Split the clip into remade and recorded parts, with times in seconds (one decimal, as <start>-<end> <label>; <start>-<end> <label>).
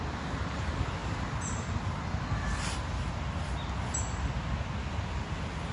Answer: 0.0-5.7 recorded